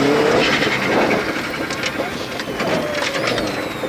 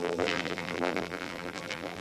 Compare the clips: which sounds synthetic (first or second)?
second